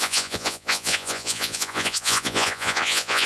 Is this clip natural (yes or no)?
no